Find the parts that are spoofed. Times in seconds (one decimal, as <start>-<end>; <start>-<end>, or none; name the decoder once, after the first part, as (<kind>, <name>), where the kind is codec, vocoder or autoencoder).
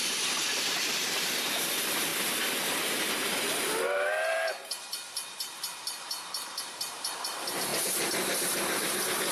0.0-7.7 (vocoder, BigVGAN v2); 8.8-9.3